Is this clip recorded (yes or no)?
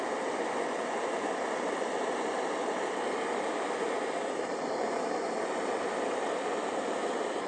yes